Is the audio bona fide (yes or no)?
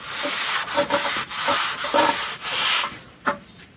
yes